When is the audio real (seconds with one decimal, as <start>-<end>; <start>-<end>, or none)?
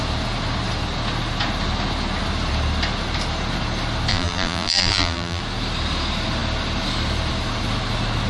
0.0-4.1; 5.4-8.3